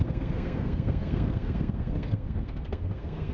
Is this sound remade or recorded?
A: remade